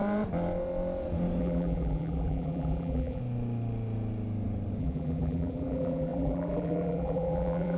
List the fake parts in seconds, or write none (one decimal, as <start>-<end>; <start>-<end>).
1.4-3.2; 4.8-7.8